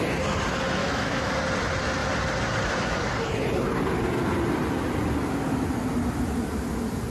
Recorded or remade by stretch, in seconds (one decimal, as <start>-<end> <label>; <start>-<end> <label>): 0.0-0.8 recorded; 0.8-1.3 remade; 1.3-7.1 recorded